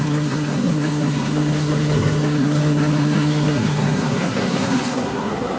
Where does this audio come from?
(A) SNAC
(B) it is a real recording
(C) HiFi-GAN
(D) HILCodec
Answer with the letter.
A